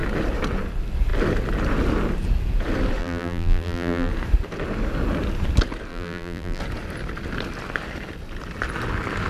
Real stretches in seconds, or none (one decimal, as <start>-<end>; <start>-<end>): 0.0-3.0; 4.1-5.9; 6.6-9.3